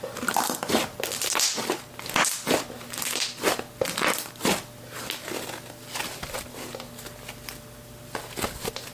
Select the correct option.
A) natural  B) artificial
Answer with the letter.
A